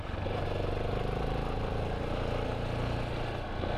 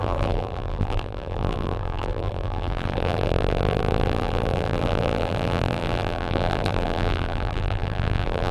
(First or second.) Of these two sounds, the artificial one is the second